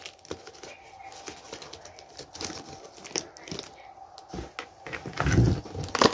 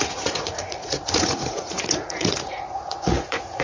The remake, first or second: second